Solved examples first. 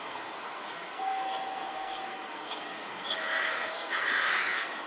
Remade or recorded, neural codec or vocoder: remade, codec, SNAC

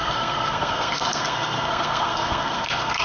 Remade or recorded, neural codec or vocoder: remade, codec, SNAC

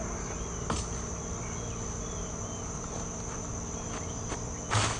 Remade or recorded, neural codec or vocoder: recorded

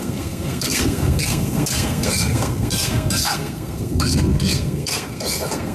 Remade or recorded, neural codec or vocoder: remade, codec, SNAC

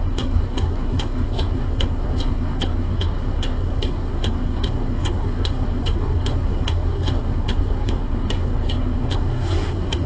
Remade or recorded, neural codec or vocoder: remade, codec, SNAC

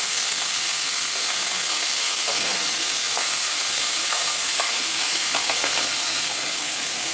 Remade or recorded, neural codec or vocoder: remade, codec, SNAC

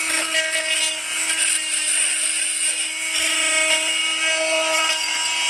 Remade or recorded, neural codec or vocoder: recorded